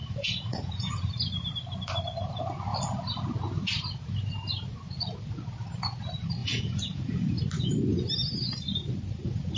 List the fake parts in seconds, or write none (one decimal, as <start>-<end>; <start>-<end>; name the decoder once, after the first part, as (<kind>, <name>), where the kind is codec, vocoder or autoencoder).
0.0-0.9 (vocoder, Vocos); 6.4-7.4